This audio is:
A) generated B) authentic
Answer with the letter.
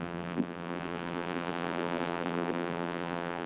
A